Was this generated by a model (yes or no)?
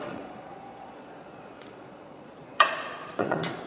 yes